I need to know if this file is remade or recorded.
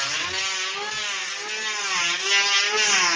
recorded